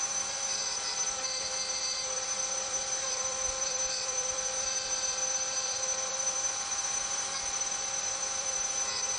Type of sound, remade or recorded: remade